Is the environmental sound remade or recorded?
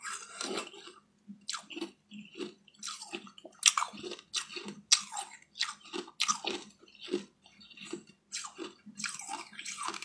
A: recorded